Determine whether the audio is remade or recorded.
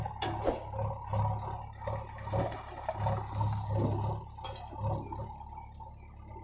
recorded